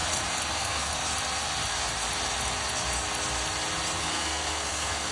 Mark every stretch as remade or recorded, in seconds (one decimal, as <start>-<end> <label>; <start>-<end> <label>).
0.0-0.5 recorded; 0.5-0.9 remade; 0.9-4.0 recorded; 4.0-5.1 remade